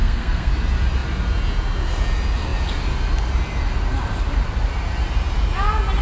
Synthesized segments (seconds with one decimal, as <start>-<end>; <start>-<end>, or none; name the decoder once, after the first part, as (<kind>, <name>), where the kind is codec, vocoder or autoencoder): 0.0-0.5 (codec, SNAC)